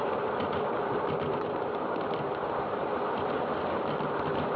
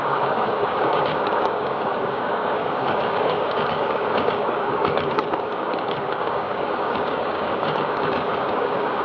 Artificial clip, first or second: second